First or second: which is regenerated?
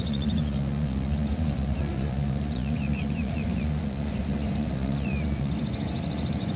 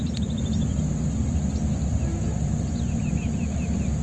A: first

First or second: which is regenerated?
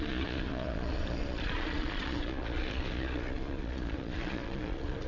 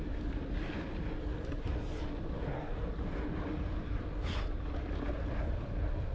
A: first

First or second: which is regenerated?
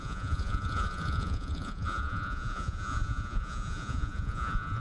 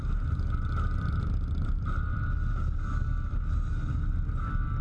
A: first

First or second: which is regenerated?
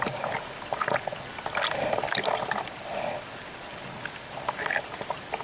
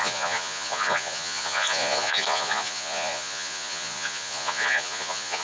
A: second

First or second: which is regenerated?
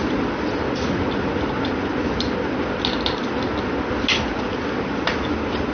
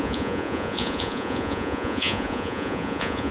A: second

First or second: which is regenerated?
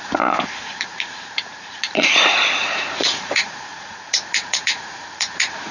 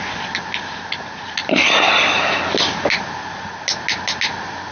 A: first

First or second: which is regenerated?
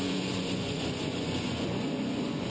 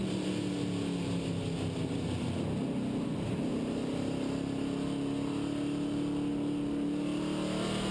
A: first